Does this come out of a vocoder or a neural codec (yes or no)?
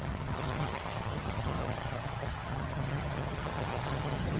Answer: yes